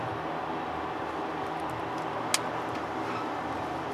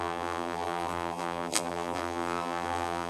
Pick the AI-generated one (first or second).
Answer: second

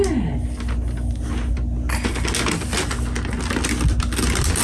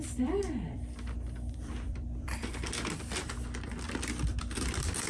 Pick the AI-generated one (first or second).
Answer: second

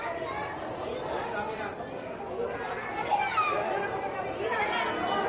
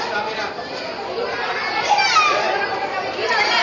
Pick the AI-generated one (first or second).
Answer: second